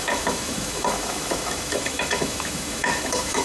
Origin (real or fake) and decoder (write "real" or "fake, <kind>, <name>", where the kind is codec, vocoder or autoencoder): fake, autoencoder, DAC-VAE